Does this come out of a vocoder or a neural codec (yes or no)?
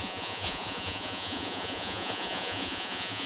yes